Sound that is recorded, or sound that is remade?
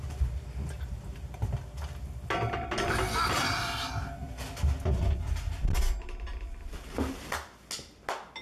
recorded